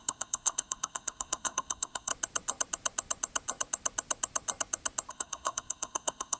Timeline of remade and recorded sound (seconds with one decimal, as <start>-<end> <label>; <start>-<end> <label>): 0.0-2.1 remade; 2.1-5.1 recorded; 5.1-6.4 remade